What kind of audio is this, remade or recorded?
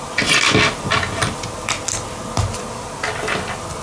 recorded